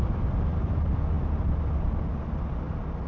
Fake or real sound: real